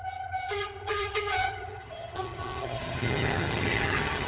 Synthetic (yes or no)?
yes